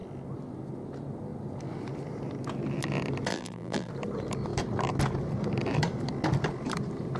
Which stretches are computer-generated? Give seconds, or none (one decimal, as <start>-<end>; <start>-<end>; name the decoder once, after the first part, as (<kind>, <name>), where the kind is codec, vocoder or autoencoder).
3.3-3.9 (vocoder, BigVGAN v2)